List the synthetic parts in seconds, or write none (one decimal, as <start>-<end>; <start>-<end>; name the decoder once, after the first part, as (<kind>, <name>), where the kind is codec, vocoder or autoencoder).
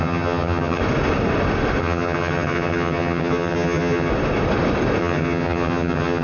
0.0-0.8 (vocoder, HiFi-GAN); 1.8-4.1; 5.0-6.2